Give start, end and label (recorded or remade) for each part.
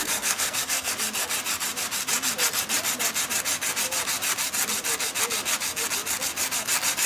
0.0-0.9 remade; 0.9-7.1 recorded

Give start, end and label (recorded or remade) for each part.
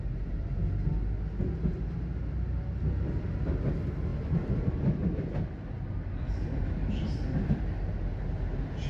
0.0-8.9 recorded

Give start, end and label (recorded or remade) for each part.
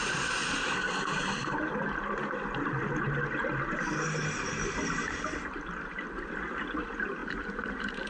0.0-7.2 recorded; 7.2-8.1 remade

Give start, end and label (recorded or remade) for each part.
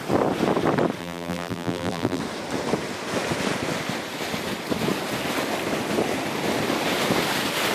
0.0-1.0 recorded; 1.0-2.2 remade; 2.2-7.7 recorded